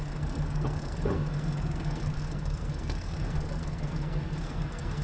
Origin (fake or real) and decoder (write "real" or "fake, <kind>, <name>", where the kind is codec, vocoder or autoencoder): fake, codec, SNAC